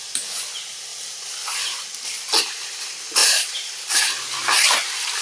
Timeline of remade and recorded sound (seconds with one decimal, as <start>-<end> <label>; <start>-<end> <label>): 0.0-0.9 recorded; 0.9-2.4 remade; 2.4-3.2 recorded; 3.2-4.0 remade; 4.0-5.2 recorded